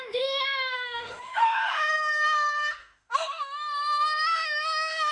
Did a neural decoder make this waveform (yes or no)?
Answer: yes